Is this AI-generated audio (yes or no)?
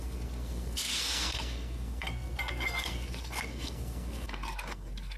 yes